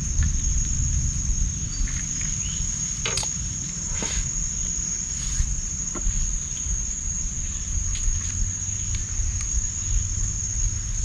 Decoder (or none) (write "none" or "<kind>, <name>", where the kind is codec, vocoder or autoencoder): none